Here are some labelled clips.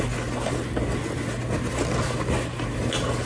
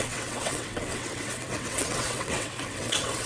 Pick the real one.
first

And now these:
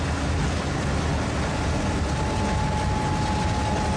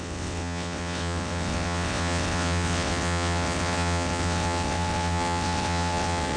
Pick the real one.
first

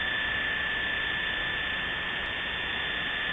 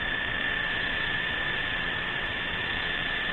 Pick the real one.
first